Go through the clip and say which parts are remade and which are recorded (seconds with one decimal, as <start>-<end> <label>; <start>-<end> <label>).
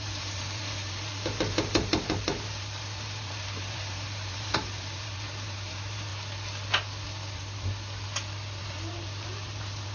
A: 0.0-6.1 remade; 6.1-8.6 recorded; 8.6-9.9 remade